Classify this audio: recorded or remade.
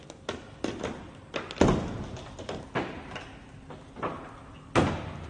recorded